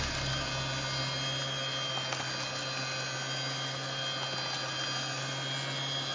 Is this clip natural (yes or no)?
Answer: yes